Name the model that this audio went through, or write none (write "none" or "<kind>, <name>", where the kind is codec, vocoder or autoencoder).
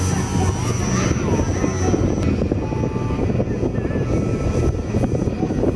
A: none